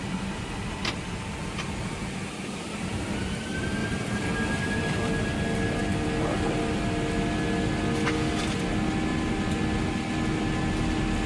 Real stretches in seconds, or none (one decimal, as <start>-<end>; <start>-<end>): 0.0-3.8; 4.9-11.3